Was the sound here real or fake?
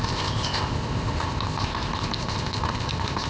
fake